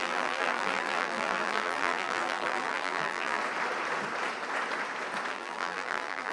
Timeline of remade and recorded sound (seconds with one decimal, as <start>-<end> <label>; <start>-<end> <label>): 0.0-3.4 remade; 3.4-5.3 recorded; 5.3-6.3 remade